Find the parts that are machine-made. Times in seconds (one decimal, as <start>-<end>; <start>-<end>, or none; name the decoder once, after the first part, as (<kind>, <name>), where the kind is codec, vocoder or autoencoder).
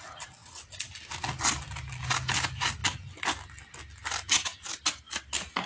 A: none